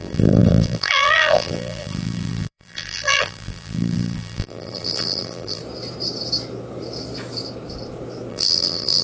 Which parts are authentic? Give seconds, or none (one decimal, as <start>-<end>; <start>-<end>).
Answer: 5.6-8.3